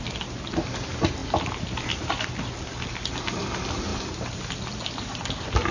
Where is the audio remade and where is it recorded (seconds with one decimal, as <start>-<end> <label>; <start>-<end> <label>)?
0.0-5.7 recorded